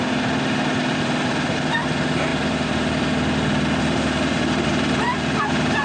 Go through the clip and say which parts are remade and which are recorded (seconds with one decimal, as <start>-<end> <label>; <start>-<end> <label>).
0.0-5.8 remade